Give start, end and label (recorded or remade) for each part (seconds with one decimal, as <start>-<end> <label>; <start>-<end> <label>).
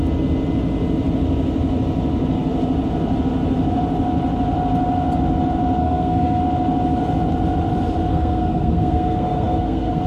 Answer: 0.0-5.8 recorded; 5.8-6.4 remade; 6.4-8.1 recorded; 8.1-10.1 remade